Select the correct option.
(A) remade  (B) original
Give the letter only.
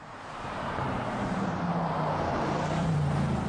A